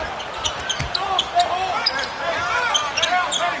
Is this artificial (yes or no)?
no